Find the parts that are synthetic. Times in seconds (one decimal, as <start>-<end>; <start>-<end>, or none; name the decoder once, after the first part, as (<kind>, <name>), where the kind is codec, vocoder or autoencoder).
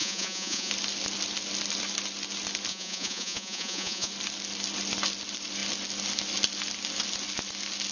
0.0-0.7 (vocoder, Vocos); 2.7-4.1